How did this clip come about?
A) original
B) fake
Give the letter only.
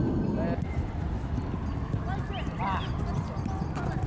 A